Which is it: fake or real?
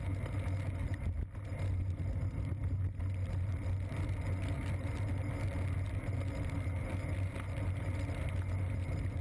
real